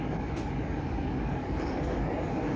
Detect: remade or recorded remade